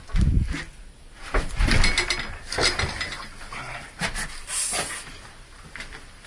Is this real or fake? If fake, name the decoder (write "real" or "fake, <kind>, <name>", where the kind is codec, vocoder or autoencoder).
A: real